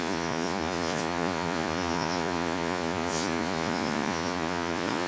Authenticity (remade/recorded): remade